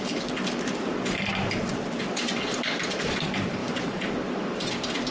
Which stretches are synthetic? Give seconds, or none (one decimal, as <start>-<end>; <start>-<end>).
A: none